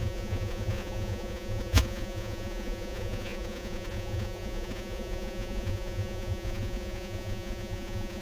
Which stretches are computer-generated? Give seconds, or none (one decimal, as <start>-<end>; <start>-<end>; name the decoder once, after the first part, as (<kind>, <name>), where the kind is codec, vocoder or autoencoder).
0.0-8.2 (vocoder, Vocos)